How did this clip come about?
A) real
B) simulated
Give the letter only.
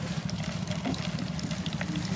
A